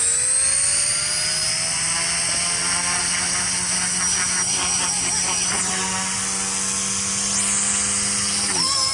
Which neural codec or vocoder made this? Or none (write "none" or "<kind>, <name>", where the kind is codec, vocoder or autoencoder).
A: none